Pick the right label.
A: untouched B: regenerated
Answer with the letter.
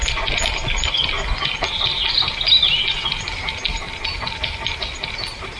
A